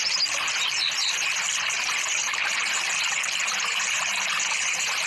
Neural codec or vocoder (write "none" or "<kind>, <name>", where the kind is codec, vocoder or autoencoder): none